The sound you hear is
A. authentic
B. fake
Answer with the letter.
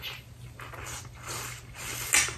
A